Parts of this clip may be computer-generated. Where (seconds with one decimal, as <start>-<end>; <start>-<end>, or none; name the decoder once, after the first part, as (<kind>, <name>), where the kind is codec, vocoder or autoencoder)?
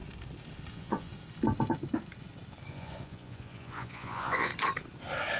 0.7-1.1 (vocoder, Vocos); 2.7-4.5